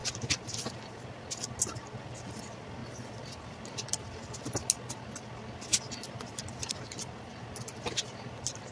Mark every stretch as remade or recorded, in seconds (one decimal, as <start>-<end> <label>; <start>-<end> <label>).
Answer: 0.0-8.7 recorded

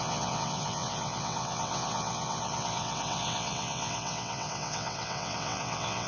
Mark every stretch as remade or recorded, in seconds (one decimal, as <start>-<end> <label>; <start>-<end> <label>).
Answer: 0.0-6.1 remade